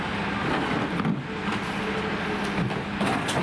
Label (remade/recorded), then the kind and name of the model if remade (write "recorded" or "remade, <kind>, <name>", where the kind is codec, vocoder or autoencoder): recorded